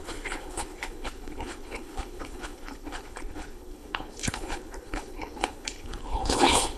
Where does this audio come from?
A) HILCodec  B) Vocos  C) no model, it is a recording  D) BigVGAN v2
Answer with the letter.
A